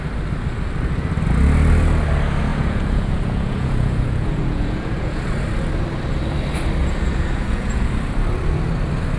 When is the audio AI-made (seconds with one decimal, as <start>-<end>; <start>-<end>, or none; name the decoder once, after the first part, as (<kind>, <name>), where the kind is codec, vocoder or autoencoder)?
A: 2.5-5.2 (vocoder, Vocos); 6.8-7.9